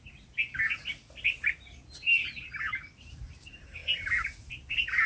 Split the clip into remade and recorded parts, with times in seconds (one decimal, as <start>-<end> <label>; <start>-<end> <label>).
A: 0.0-5.1 recorded